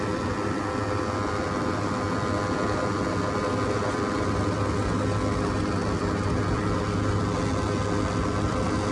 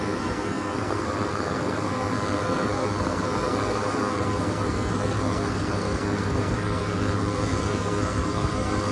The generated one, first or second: second